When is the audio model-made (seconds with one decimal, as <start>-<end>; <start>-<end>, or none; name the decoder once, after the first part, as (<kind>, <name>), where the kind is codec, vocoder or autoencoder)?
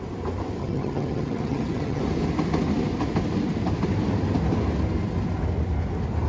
0.6-2.0 (vocoder, HiFi-GAN)